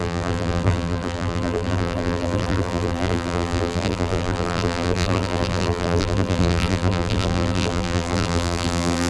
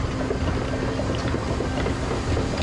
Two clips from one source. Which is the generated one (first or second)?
first